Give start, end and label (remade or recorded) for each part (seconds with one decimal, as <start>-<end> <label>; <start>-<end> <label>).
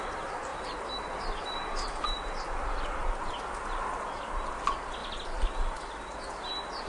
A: 0.0-6.9 recorded